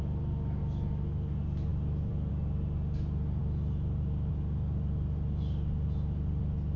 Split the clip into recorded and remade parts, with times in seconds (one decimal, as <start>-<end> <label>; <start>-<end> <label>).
0.0-1.7 recorded; 1.7-2.3 remade; 2.3-6.8 recorded